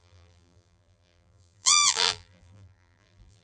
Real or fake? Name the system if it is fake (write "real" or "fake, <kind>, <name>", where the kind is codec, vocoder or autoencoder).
fake, vocoder, BigVGAN v2